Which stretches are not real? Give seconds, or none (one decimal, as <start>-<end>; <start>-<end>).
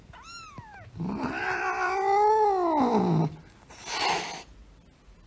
none